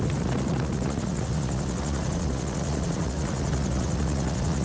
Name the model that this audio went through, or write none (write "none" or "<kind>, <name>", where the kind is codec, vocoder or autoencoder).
vocoder, Vocos